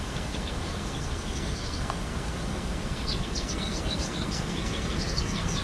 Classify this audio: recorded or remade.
remade